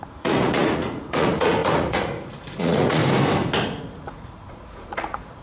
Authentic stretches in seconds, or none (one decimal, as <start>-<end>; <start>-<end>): 3.0-3.8